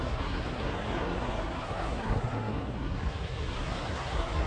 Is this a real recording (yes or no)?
no